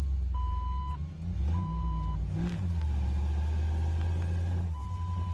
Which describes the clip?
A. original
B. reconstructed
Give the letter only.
A